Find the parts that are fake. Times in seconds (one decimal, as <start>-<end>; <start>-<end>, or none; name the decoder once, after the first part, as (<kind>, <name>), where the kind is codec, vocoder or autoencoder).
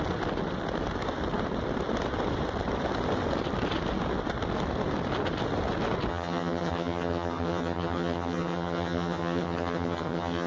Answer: 6.1-10.5 (vocoder, HiFi-GAN)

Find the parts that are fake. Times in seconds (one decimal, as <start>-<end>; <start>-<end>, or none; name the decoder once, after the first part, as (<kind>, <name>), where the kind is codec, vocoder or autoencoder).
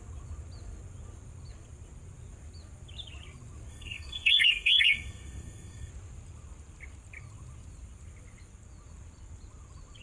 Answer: 3.7-5.9 (codec, SNAC)